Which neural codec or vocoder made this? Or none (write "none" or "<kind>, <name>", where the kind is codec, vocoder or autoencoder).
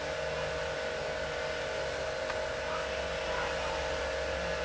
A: none